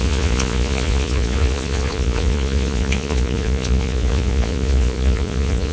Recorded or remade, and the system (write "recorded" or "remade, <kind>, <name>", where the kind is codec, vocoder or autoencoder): remade, vocoder, Vocos